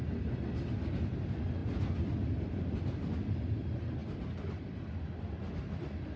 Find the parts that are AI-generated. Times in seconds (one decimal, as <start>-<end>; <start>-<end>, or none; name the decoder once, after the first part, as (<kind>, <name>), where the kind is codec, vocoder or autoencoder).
none